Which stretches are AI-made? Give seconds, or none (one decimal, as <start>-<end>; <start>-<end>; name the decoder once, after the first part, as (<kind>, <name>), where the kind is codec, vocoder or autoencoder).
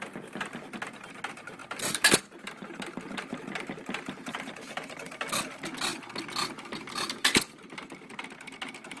none